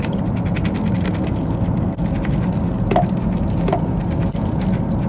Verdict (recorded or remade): recorded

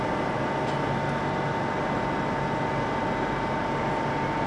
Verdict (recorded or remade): recorded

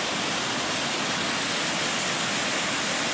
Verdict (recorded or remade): recorded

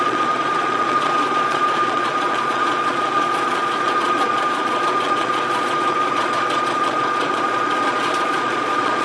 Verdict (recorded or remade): remade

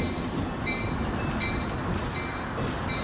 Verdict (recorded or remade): recorded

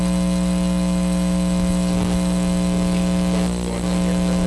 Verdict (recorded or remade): recorded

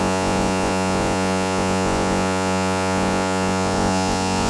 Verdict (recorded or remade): remade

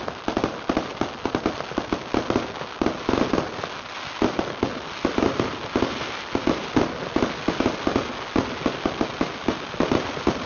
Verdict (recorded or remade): recorded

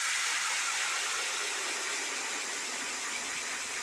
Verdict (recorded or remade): recorded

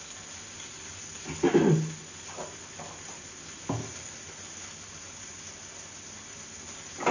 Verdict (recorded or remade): recorded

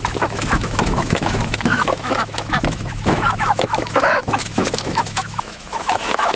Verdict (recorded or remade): remade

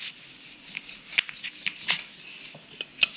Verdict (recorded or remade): recorded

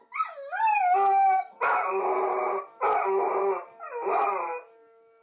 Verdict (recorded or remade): recorded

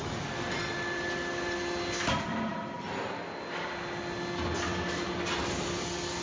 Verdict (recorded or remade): recorded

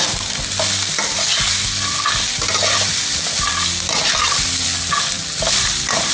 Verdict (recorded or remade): recorded